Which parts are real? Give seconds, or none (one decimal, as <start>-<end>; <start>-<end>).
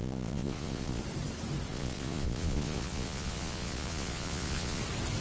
1.0-1.7; 4.8-5.2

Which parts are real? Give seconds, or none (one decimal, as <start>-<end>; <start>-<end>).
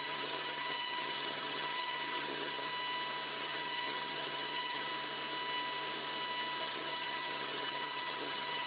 2.7-3.4; 4.9-6.6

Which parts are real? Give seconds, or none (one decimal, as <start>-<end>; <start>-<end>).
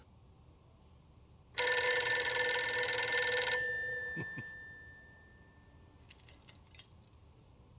0.0-3.9; 5.0-7.8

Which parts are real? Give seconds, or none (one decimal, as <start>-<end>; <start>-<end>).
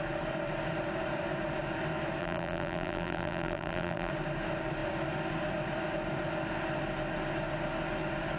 0.0-2.2; 4.1-8.4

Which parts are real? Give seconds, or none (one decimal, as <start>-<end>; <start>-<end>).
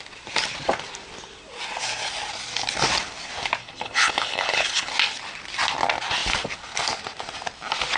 0.0-3.6; 4.9-8.0